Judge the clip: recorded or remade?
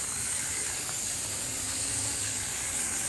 remade